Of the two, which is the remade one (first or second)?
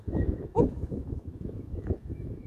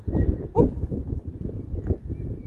first